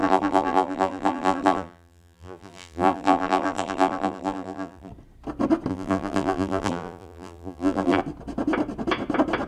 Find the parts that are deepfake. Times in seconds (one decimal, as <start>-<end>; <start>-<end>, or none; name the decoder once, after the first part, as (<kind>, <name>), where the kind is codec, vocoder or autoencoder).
0.0-4.9 (vocoder, BigVGAN v2); 5.7-8.0